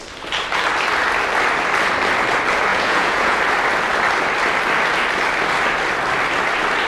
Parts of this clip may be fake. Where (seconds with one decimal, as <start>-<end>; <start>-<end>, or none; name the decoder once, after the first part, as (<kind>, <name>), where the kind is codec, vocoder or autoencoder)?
2.7-3.4 (vocoder, Vocos)

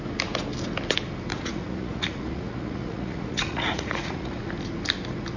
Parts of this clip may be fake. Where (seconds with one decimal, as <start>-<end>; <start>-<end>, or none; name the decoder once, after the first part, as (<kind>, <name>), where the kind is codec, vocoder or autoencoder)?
1.3-4.5 (vocoder, Vocos)

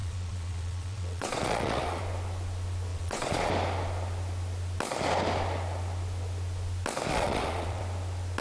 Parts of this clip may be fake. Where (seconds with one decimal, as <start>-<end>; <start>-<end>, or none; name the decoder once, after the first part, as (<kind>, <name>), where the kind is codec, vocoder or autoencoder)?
0.0-2.0 (vocoder, Vocos); 2.9-3.5; 7.1-7.8

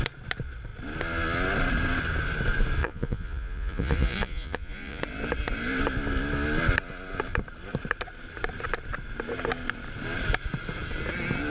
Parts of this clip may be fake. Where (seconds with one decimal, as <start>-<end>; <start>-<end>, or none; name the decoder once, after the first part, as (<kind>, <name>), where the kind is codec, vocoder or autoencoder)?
2.8-5.0 (vocoder, Vocos)

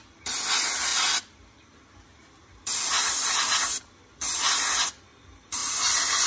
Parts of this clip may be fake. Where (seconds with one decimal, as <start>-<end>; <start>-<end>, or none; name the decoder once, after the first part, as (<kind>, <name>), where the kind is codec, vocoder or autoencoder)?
none

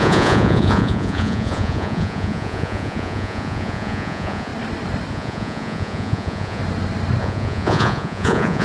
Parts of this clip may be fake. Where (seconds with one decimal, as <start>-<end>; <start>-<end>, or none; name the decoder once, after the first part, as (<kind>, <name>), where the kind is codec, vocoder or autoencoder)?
0.0-4.5 (vocoder, Vocos); 5.1-6.6; 7.2-8.6

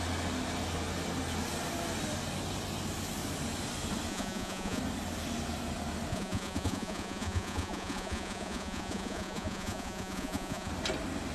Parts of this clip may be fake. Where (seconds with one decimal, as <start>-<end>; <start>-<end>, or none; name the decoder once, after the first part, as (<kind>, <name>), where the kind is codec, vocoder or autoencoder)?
4.1-4.8 (vocoder, Vocos); 6.1-10.7

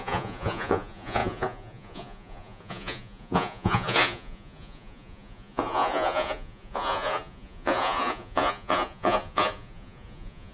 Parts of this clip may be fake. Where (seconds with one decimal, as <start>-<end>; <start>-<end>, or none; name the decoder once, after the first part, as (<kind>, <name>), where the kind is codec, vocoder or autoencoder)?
0.0-10.5 (vocoder, Vocos)